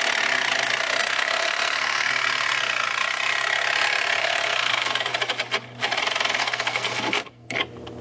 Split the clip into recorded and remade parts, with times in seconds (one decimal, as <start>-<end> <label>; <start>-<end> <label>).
0.0-1.0 recorded; 1.0-2.1 remade; 2.1-4.2 recorded; 4.2-5.1 remade; 5.1-6.4 recorded; 6.4-7.6 remade; 7.6-8.0 recorded

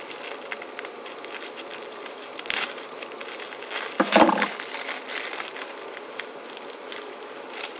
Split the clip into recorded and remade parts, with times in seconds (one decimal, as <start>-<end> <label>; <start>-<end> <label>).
0.0-1.7 recorded; 1.7-3.2 remade; 3.2-7.8 recorded

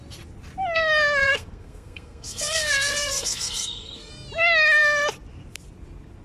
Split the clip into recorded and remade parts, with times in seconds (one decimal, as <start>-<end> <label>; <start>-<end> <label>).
0.0-1.2 recorded; 1.2-4.1 remade; 4.1-6.2 recorded

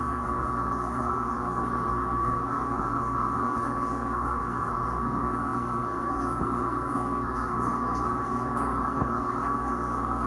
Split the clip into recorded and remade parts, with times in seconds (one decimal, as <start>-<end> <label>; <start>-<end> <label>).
0.0-10.3 remade

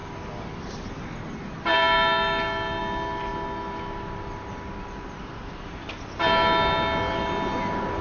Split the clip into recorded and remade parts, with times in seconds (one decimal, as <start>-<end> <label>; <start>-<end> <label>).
0.0-8.0 recorded

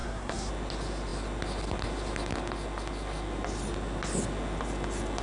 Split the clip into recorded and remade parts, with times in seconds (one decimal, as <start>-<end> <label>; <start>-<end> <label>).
0.0-0.5 remade; 0.5-5.2 recorded